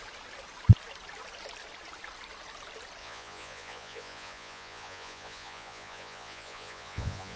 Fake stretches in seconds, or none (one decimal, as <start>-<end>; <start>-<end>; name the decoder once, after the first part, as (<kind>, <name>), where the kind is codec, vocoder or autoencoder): 3.0-7.4 (vocoder, Vocos)